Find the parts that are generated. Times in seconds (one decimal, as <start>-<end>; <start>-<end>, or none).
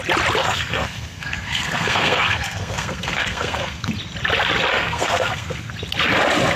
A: 0.4-3.9; 4.7-5.7